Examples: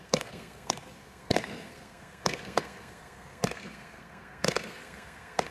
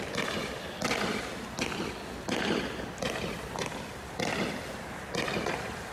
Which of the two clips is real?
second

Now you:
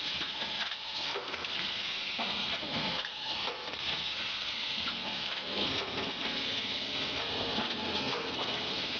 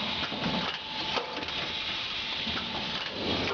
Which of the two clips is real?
second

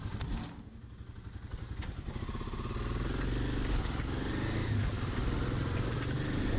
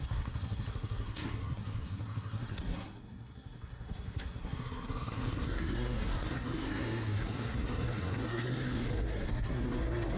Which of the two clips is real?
first